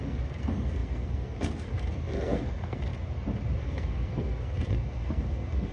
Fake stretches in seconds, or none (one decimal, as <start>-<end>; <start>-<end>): 0.0-2.9; 3.6-5.7